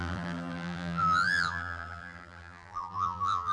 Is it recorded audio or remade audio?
remade